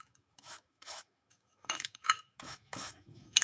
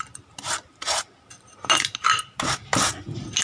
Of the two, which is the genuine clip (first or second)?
second